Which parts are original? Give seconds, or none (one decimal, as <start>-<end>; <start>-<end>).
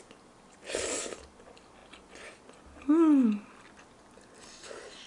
0.0-5.1